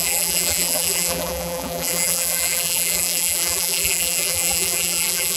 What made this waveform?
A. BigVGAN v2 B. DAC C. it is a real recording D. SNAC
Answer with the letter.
A